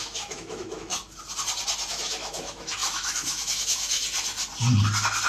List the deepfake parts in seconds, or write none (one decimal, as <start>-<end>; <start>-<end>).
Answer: 0.0-0.9; 1.9-4.0